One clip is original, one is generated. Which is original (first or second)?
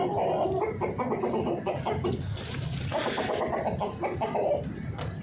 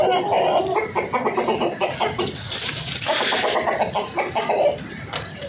first